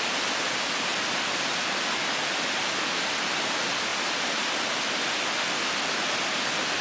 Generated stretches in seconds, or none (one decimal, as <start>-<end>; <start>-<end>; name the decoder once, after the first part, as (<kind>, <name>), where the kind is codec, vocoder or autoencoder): 0.9-1.5 (vocoder, BigVGAN v2); 3.9-4.6